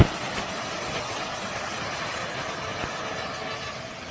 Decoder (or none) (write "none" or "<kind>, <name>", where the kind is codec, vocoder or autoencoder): none